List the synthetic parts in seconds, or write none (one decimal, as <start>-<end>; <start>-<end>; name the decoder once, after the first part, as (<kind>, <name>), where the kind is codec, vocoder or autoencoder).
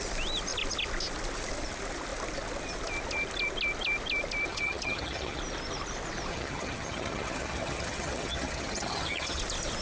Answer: 4.5-5.4 (vocoder, HiFi-GAN); 6.3-9.4